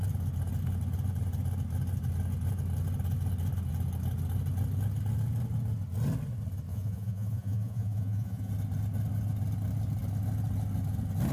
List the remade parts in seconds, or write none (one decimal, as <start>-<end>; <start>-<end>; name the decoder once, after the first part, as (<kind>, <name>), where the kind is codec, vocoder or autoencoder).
6.7-8.5 (vocoder, Vocos)